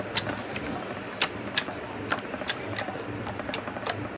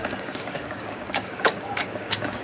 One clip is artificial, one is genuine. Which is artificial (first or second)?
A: second